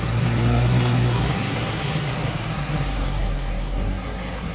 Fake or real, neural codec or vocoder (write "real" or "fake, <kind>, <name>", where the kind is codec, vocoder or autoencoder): fake, codec, SNAC